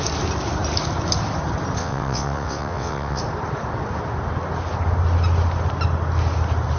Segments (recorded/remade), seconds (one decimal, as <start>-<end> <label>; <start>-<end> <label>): 0.0-1.8 recorded; 1.8-3.2 remade; 3.2-6.8 recorded